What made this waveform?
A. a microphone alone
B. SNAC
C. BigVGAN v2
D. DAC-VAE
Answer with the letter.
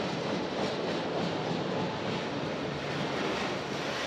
A